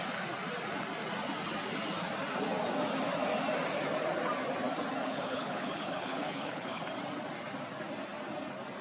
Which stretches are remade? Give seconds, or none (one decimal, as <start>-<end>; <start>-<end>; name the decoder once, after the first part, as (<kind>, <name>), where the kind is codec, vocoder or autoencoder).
5.0-6.8 (codec, HILCodec)